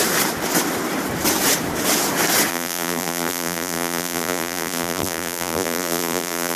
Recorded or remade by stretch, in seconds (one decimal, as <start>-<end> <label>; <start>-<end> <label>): 0.0-2.5 recorded; 2.5-6.6 remade